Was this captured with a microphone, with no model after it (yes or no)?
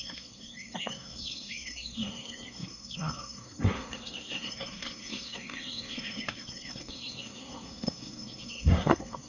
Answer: no